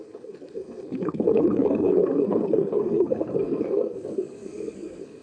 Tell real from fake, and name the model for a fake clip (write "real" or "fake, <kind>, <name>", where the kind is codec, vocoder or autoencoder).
fake, codec, SNAC